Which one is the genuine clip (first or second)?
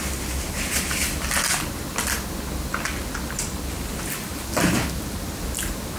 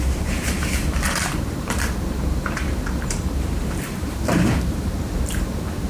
first